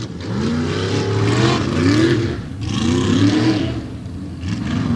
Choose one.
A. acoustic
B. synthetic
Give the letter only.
A